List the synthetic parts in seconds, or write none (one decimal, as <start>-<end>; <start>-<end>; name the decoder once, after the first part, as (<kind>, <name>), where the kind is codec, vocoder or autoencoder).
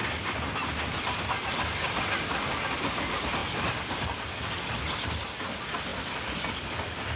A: none